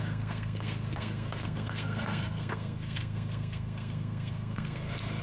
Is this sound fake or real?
fake